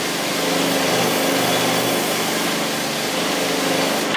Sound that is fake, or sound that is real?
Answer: real